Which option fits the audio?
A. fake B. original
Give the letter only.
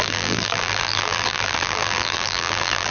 A